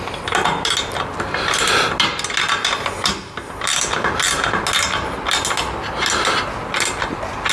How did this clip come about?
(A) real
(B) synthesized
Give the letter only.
A